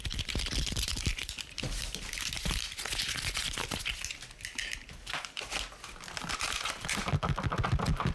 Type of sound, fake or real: real